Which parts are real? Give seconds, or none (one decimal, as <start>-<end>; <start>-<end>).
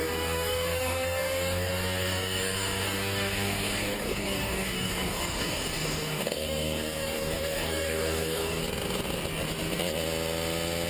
8.6-10.9